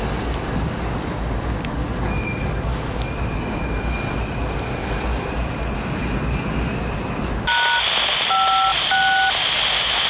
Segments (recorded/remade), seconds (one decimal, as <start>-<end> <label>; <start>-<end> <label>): 0.0-10.1 recorded